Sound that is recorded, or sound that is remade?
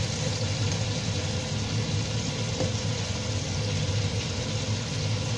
recorded